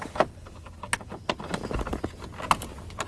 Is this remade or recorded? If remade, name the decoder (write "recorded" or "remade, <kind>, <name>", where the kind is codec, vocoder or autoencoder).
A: recorded